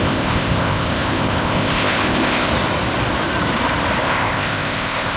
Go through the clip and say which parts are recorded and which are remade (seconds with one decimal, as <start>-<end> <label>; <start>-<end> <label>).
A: 0.0-2.5 remade; 2.5-4.0 recorded; 4.0-5.2 remade